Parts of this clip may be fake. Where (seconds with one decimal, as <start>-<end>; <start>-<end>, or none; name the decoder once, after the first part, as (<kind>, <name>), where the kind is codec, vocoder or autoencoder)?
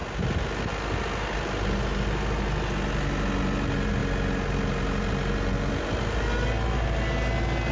none